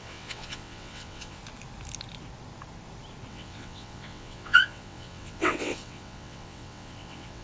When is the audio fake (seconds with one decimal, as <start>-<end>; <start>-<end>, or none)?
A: 0.0-1.4; 3.3-7.4